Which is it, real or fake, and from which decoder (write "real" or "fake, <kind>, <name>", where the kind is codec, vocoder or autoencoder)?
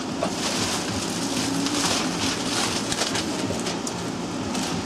real